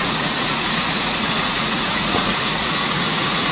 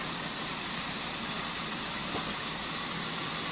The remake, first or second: first